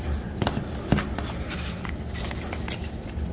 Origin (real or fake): real